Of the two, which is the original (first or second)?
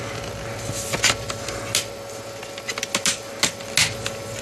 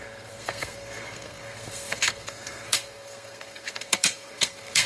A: first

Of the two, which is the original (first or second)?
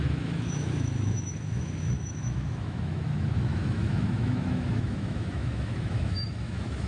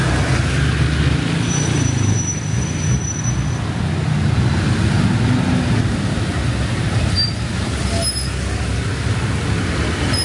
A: second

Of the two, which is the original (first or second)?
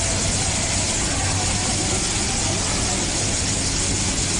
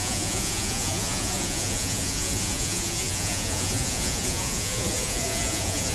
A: first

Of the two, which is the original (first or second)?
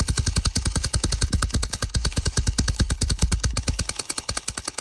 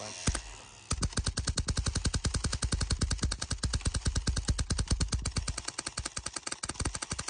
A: second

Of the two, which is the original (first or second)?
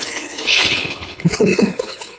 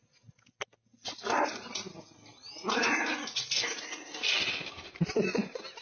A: second